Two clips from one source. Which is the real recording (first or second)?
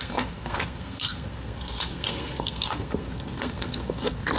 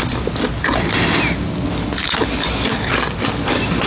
second